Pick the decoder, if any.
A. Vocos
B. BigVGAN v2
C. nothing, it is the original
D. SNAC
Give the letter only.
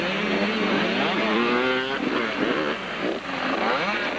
C